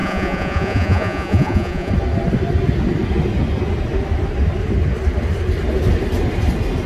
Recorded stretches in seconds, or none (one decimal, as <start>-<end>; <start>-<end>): 1.9-6.9